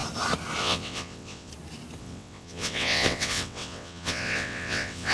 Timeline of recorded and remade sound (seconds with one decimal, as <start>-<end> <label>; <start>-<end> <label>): 0.0-0.6 recorded; 0.6-1.5 remade; 1.5-2.0 recorded; 2.0-5.1 remade